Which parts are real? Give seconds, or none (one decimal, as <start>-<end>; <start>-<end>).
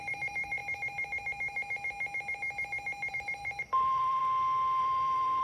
0.6-3.1; 4.2-4.8